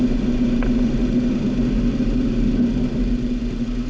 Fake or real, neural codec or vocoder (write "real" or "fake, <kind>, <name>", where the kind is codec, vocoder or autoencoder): real